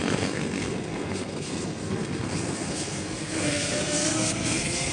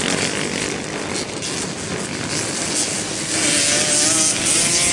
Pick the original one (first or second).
second